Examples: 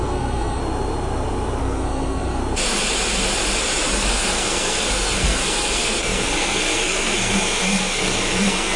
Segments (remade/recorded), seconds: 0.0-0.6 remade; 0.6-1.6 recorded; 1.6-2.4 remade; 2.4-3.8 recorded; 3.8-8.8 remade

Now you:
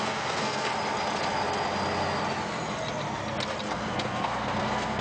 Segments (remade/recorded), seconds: 0.0-0.7 remade; 0.7-3.7 recorded; 3.7-5.0 remade

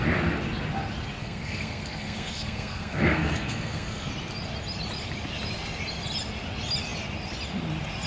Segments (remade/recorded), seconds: 0.0-1.2 recorded; 1.2-4.1 remade; 4.1-8.1 recorded

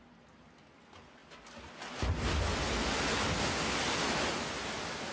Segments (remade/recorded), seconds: 0.0-5.1 recorded

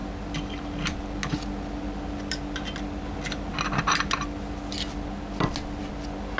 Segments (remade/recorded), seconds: 0.0-6.4 recorded

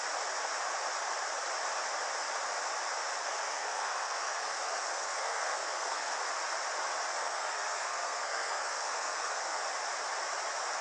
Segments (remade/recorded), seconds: 0.0-3.2 recorded; 3.2-6.2 remade; 6.2-7.2 recorded; 7.2-9.6 remade; 9.6-10.8 recorded